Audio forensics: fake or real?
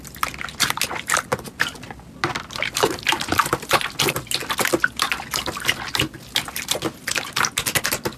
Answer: real